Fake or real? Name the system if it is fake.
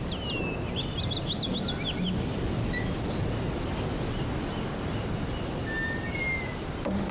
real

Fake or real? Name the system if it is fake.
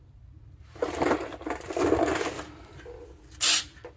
real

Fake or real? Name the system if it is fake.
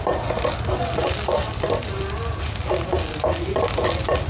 real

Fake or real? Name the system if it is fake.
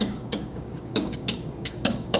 fake, codec, DAC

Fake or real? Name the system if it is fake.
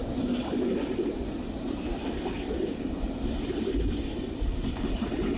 real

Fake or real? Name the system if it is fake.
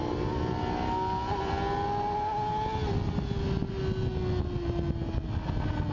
real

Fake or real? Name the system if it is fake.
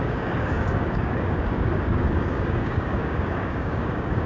fake, codec, DAC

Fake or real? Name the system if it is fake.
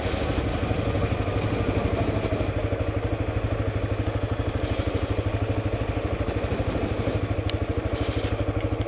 real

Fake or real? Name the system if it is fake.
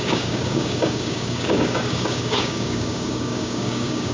fake, codec, DAC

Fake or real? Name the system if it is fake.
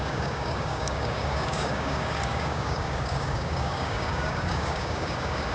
fake, codec, DAC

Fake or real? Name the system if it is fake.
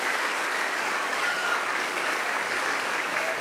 fake, codec, DAC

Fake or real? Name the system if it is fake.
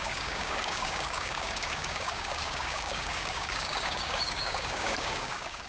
fake, codec, DAC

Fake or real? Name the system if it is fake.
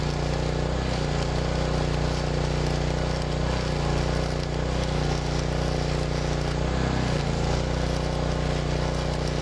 real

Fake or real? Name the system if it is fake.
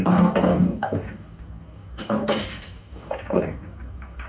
fake, codec, DAC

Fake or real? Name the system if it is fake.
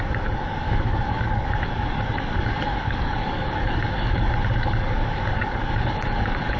fake, codec, DAC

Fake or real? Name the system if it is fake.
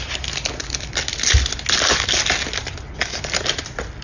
real